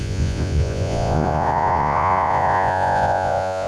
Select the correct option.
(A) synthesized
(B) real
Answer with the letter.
A